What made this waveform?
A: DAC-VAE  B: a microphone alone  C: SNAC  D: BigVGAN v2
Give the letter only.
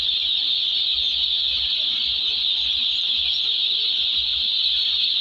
B